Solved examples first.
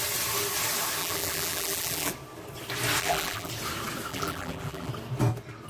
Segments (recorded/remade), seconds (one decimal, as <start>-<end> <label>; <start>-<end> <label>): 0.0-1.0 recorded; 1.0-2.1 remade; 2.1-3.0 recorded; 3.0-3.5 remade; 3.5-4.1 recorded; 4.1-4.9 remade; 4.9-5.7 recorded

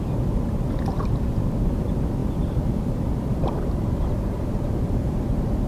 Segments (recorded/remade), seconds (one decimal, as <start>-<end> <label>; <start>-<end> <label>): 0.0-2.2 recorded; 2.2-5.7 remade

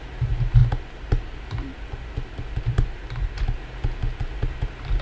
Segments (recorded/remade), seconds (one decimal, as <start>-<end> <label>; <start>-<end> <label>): 0.0-0.6 recorded; 0.6-3.6 remade; 3.6-4.0 recorded; 4.0-5.0 remade

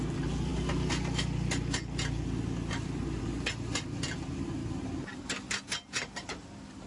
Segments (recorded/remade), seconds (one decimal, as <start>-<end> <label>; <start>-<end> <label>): 0.0-6.9 recorded